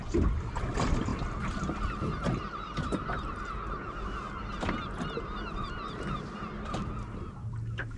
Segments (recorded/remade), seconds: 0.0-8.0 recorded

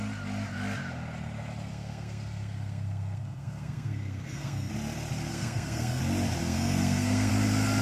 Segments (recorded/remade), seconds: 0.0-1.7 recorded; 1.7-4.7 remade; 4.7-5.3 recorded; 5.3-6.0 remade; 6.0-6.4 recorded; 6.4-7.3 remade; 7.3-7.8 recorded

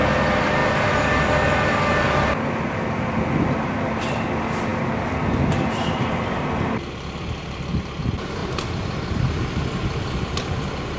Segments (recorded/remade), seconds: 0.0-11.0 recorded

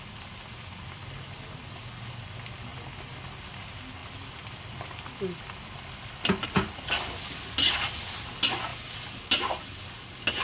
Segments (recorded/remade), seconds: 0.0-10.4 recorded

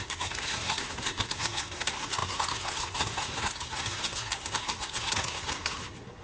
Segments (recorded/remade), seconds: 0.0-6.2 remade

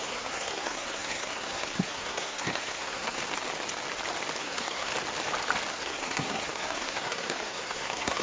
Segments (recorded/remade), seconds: 0.0-3.2 remade; 3.2-4.4 recorded; 4.4-4.9 remade; 4.9-5.7 recorded; 5.7-8.2 remade

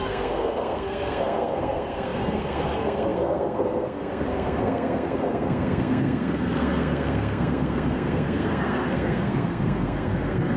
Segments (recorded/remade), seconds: 0.0-10.6 remade